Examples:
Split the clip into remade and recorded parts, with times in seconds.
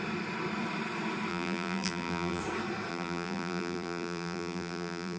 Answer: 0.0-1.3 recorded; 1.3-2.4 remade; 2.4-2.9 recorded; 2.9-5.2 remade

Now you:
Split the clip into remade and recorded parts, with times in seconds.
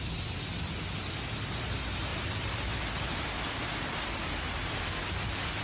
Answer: 0.0-2.1 recorded; 2.1-4.3 remade; 4.3-5.6 recorded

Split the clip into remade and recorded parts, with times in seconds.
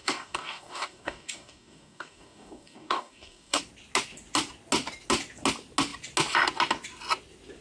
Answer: 0.0-3.6 remade; 3.6-7.6 recorded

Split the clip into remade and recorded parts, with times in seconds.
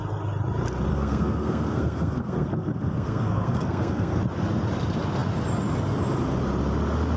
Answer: 0.0-0.9 recorded; 0.9-4.2 remade; 4.2-7.2 recorded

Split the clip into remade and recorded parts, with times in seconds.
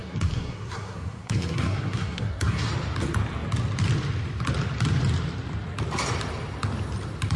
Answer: 0.0-2.7 remade; 2.7-7.4 recorded